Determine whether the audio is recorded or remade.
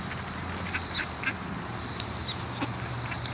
recorded